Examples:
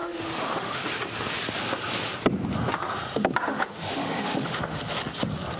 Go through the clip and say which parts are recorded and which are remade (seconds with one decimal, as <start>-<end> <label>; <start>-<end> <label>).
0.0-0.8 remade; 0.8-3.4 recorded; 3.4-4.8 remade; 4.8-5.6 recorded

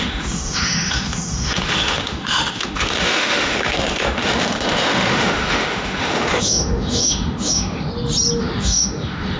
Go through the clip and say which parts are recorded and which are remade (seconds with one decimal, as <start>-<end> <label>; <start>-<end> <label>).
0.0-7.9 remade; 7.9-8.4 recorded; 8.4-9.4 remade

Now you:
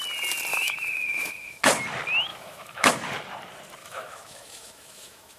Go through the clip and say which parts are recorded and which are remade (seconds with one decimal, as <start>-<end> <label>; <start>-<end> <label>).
0.0-0.5 recorded; 0.5-1.6 remade; 1.6-2.3 recorded; 2.3-2.9 remade; 2.9-3.8 recorded; 3.8-5.4 remade